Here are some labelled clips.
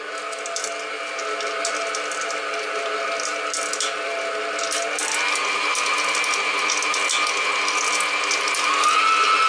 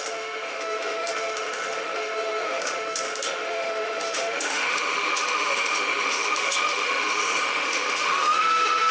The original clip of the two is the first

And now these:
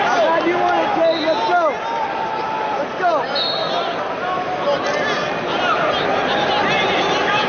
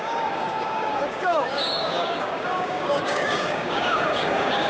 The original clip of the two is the first